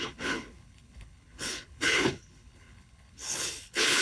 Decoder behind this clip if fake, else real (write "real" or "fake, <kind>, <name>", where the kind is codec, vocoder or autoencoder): fake, codec, HILCodec